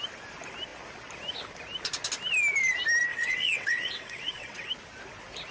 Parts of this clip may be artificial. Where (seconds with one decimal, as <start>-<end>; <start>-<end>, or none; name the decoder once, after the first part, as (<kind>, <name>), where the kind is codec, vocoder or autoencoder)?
3.1-4.7 (vocoder, WaveNeXt)